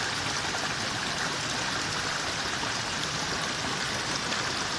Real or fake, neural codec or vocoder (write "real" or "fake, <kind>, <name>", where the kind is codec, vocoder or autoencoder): real